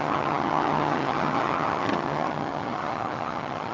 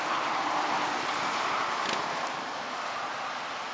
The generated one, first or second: first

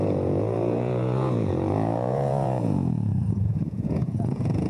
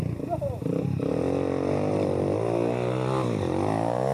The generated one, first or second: first